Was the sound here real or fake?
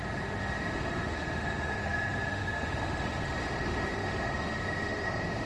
fake